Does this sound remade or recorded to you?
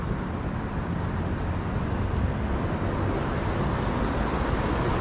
recorded